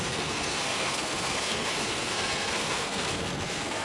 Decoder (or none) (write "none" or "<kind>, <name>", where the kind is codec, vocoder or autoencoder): codec, SNAC